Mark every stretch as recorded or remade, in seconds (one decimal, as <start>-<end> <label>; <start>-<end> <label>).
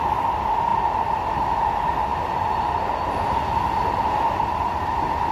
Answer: 0.0-5.3 recorded